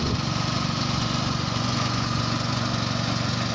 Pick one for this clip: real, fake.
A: fake